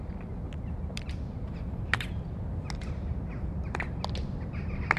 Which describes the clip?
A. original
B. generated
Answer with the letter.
A